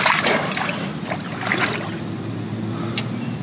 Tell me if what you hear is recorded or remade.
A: recorded